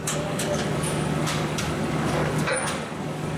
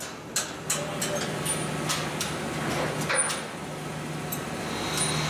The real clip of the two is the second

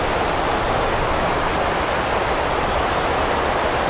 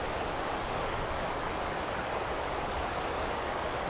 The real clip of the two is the first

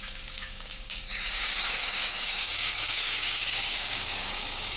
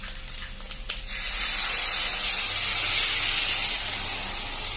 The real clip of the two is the second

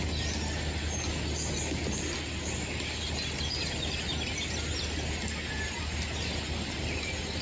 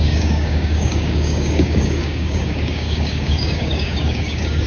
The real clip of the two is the first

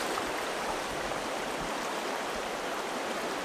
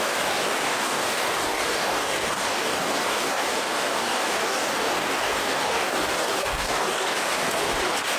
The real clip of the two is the first